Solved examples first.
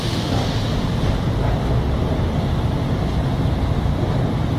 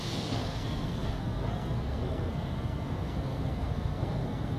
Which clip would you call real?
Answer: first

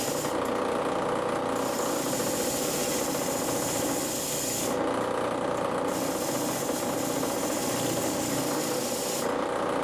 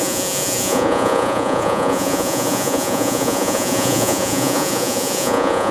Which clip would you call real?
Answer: first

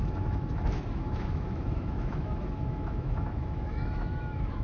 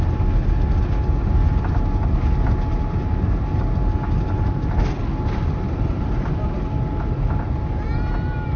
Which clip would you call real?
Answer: second